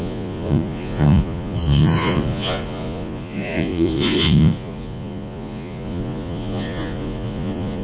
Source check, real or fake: fake